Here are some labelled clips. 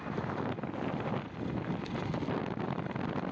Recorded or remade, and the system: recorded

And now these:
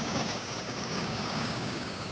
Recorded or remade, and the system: remade, codec, DAC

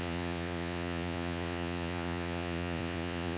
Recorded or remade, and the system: remade, vocoder, Vocos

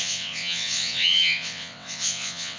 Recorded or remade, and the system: remade, vocoder, WaveNeXt